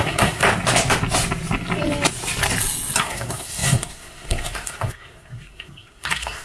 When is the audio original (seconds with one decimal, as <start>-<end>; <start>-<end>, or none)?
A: 0.4-3.0